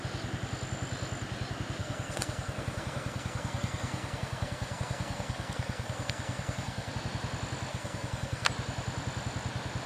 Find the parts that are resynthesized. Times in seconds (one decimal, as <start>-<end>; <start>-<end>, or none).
1.8-6.9; 7.7-8.5